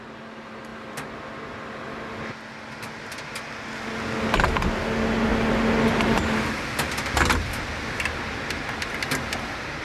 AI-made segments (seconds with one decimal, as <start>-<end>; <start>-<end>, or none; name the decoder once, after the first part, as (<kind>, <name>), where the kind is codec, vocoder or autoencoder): none